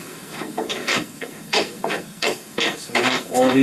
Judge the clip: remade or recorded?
remade